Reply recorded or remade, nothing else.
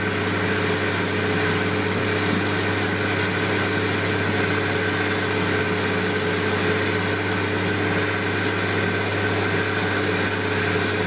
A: recorded